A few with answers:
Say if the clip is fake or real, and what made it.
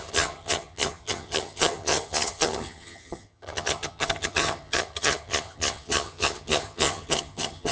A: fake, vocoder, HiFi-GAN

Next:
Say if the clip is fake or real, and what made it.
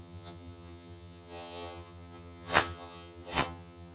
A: fake, vocoder, HiFi-GAN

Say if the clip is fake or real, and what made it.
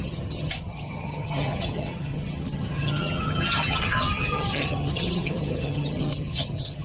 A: fake, vocoder, HiFi-GAN